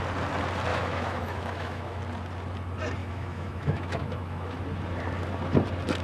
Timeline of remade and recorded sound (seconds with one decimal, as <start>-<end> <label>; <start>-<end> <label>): 0.0-0.7 recorded; 0.7-2.0 remade; 2.0-3.0 recorded; 3.0-4.6 remade; 4.6-6.0 recorded